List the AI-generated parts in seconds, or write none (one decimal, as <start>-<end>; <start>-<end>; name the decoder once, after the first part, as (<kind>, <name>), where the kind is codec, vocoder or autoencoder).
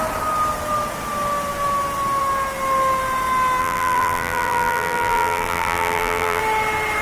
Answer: 3.6-6.4 (vocoder, BigVGAN v2)